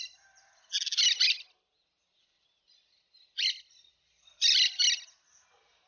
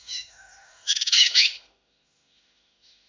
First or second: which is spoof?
second